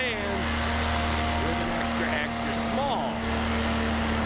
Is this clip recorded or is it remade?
recorded